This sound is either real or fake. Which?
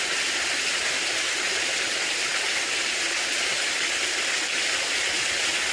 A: real